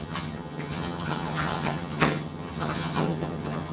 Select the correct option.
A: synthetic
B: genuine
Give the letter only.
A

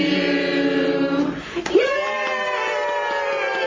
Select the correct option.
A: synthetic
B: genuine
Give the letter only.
B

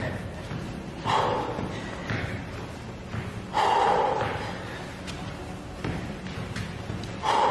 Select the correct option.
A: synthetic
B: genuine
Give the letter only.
B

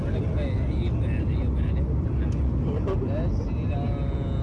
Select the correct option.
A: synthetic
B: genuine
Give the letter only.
B